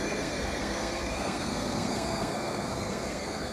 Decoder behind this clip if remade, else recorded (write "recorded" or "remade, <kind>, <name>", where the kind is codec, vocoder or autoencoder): remade, codec, SNAC